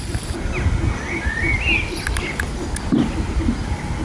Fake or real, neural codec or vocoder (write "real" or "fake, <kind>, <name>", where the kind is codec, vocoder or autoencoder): real